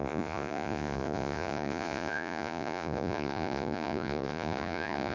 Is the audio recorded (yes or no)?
no